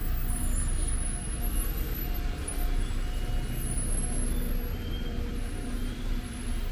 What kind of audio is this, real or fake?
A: real